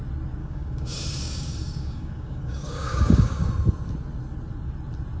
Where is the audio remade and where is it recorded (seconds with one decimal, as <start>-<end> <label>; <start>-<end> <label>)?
0.0-0.4 recorded; 0.4-3.5 remade; 3.5-5.2 recorded